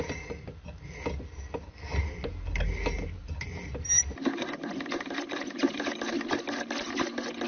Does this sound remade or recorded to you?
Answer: recorded